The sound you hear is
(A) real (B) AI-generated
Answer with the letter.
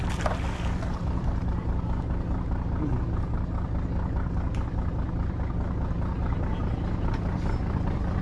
A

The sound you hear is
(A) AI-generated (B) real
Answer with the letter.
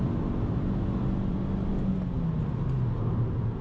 B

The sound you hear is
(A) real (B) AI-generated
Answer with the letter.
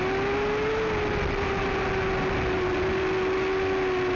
A